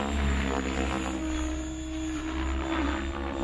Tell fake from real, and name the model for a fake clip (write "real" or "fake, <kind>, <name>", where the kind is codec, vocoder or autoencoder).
real